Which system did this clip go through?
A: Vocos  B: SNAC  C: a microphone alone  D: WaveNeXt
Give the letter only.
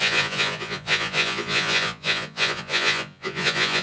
A